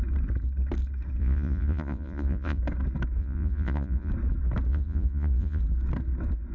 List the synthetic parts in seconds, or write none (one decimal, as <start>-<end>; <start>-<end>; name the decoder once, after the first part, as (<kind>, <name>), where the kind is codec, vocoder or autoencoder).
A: 1.2-2.6 (vocoder, Vocos); 3.2-4.1; 4.7-5.6